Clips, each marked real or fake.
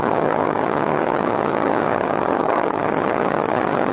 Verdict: fake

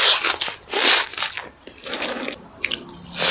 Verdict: real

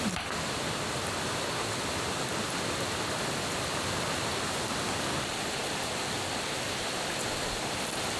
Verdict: real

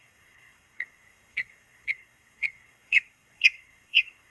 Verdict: fake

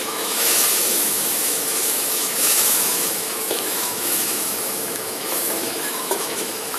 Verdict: fake